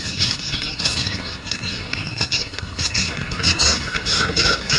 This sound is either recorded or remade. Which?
remade